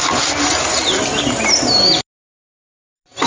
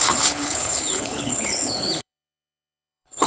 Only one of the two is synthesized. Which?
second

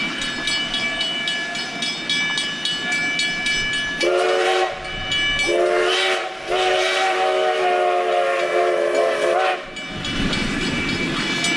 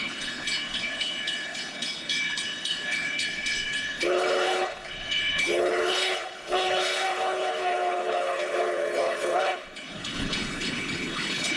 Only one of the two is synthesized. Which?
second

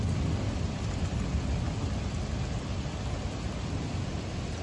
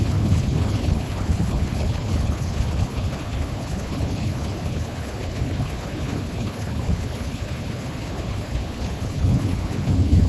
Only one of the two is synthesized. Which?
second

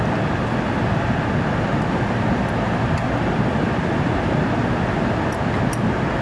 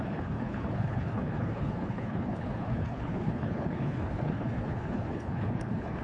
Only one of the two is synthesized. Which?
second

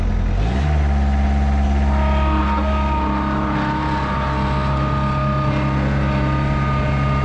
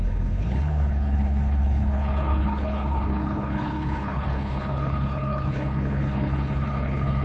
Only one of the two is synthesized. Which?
second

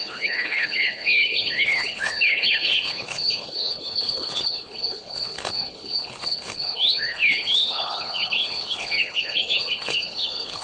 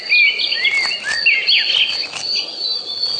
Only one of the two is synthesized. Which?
first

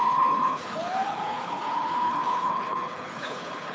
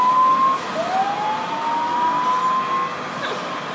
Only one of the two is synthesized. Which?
first